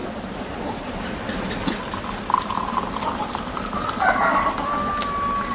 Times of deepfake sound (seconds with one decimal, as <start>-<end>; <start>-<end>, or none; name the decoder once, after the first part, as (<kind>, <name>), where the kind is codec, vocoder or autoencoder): none